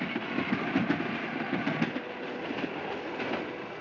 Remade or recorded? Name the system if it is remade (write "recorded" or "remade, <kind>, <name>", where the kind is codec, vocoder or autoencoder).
recorded